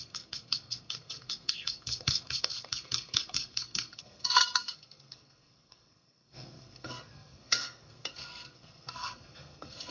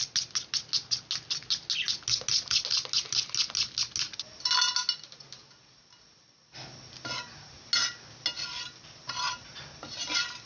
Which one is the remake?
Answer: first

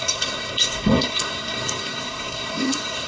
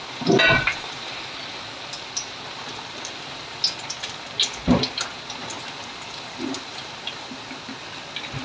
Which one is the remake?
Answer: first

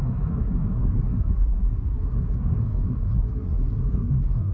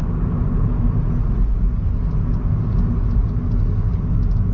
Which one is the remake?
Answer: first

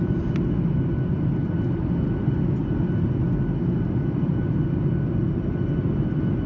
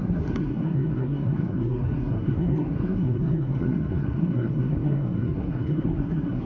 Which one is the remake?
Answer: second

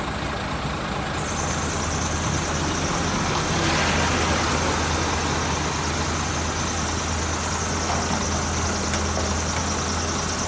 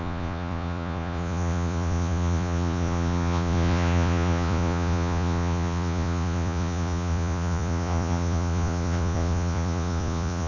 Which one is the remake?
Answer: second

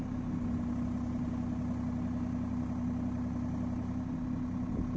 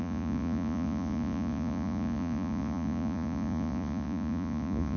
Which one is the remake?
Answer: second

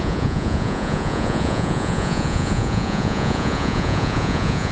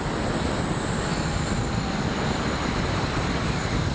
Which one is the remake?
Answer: first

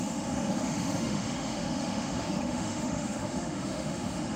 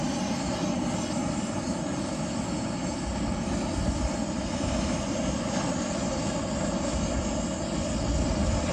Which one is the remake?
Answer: first